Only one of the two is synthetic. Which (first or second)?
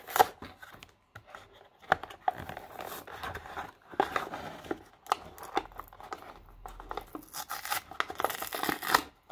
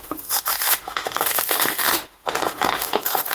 second